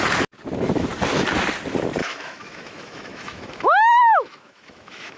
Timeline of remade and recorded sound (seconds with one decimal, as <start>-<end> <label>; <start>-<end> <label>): 0.0-2.0 recorded; 2.0-5.2 remade